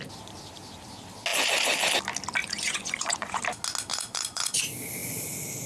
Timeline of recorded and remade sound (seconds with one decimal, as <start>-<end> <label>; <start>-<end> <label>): 0.0-2.4 recorded; 2.4-3.4 remade; 3.4-3.9 recorded; 3.9-4.6 remade; 4.6-5.7 recorded